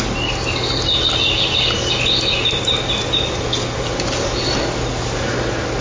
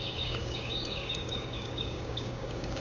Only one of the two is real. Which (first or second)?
first